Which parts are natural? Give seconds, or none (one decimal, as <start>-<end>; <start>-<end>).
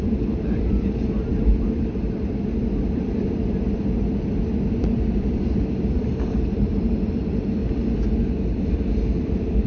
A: 7.6-8.6